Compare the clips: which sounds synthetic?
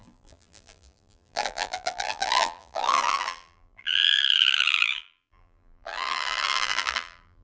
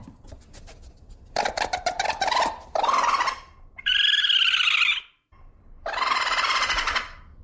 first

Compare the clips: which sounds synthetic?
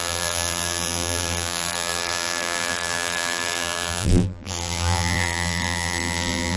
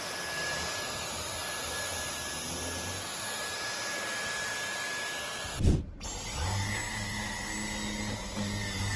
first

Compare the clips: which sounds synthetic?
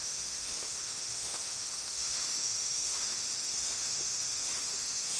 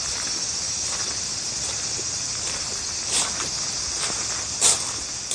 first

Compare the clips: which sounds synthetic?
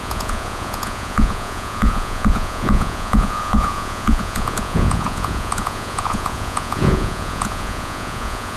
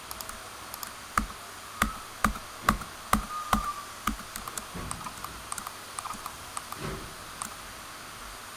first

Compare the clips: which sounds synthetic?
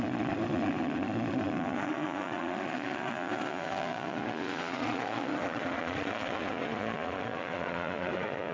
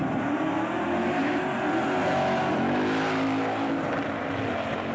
first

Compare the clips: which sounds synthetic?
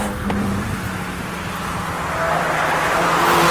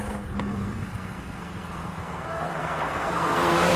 second